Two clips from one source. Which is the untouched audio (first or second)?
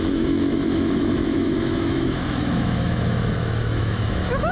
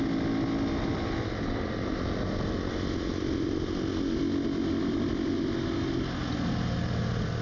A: second